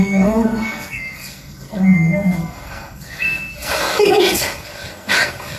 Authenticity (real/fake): fake